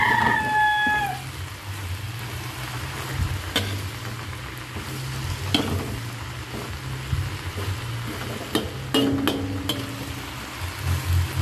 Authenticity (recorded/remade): recorded